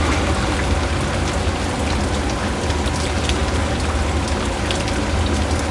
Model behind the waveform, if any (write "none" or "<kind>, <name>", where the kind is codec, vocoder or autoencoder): none